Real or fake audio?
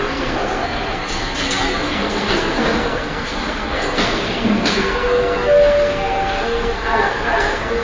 fake